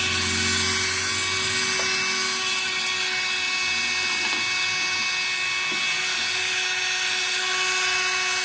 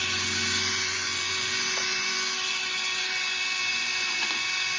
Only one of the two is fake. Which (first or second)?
second